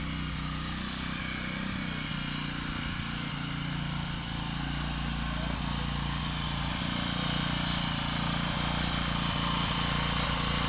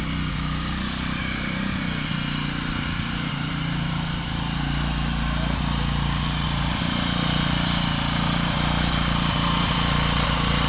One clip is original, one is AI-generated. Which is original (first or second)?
first